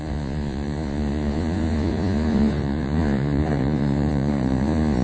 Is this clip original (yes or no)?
no